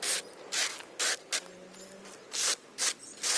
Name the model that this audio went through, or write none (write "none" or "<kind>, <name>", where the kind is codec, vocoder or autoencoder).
none